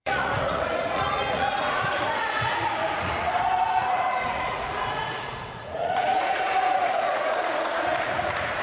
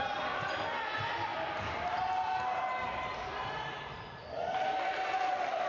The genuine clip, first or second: second